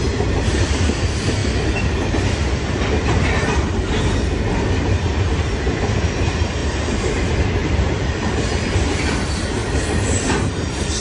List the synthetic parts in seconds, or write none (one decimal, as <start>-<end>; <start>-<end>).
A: 6.6-7.1; 7.6-8.4

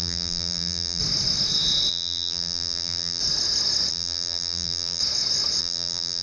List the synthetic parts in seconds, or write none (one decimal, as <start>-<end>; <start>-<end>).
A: 0.0-1.0; 1.9-3.2; 3.9-5.0; 5.6-6.2

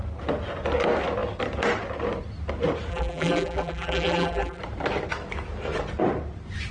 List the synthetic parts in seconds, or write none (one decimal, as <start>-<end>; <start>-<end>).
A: 2.9-4.6

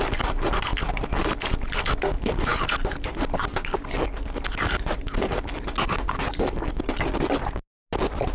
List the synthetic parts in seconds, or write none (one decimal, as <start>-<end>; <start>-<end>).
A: none

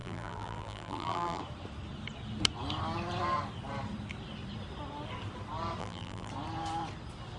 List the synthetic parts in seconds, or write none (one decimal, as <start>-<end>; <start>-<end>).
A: 0.0-1.4; 5.8-6.3

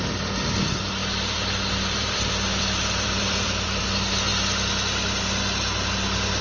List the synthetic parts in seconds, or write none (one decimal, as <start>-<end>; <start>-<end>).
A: 1.0-3.8